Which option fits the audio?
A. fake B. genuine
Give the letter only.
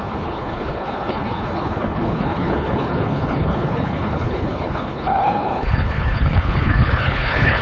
A